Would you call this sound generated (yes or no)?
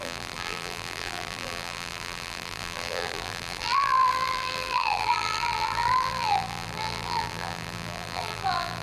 yes